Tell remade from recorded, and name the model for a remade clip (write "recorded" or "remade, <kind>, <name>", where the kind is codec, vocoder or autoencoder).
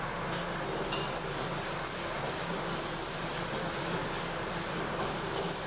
recorded